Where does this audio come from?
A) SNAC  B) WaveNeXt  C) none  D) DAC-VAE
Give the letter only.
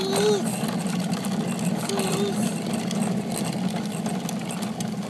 C